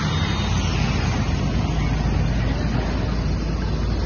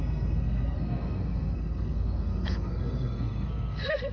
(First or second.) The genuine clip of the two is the first